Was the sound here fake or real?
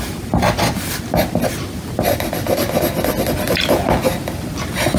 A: real